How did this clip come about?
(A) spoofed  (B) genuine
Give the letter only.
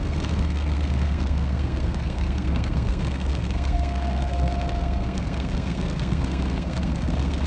A